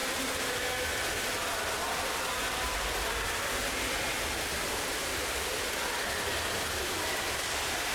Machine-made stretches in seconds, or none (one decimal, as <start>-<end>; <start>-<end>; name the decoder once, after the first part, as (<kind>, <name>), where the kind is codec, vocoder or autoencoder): none